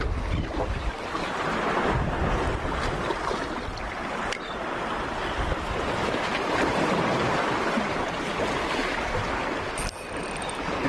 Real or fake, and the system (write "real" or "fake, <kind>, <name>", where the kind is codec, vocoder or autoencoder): real